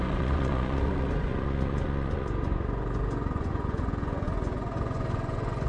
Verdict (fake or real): fake